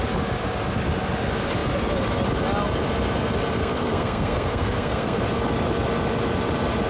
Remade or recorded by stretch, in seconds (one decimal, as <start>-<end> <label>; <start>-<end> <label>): 0.0-3.6 recorded; 3.6-5.2 remade; 5.2-6.9 recorded